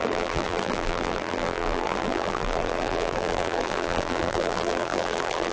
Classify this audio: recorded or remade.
remade